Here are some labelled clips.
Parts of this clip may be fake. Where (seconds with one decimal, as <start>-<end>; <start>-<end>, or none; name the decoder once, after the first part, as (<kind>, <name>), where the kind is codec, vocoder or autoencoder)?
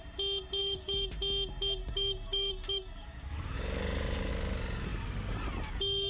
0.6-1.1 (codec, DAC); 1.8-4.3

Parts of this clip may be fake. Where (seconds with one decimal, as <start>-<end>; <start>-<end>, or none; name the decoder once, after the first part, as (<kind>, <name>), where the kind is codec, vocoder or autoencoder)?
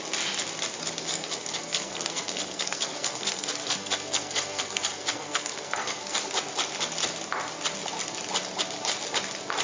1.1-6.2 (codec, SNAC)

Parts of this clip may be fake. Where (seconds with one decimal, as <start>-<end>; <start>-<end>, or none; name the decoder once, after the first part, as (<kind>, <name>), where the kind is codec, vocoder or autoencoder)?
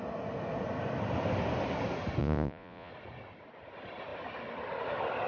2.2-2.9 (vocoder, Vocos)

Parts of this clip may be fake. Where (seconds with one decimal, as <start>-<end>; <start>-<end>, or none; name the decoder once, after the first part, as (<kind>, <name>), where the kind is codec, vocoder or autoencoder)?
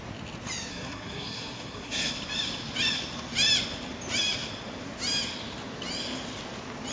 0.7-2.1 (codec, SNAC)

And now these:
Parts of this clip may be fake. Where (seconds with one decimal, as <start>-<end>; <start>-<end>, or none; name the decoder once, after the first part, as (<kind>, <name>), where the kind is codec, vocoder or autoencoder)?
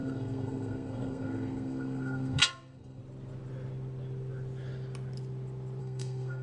0.0-3.0 (codec, SNAC); 5.8-6.4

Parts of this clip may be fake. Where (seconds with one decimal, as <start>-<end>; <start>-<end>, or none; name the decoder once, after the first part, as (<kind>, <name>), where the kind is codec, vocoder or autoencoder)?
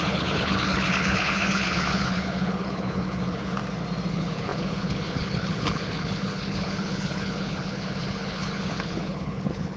0.0-3.6 (codec, HILCodec); 4.1-9.8